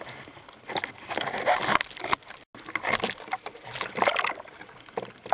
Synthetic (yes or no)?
no